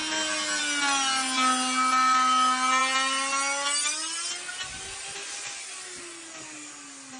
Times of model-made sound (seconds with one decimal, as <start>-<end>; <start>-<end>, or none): none